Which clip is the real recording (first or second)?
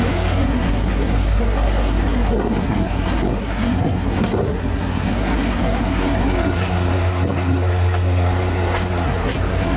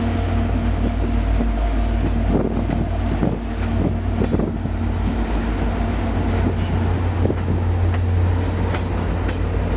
second